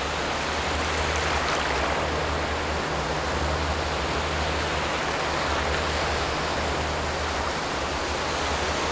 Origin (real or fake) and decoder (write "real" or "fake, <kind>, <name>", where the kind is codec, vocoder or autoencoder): real